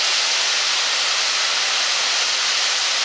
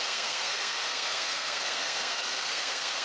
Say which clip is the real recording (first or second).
first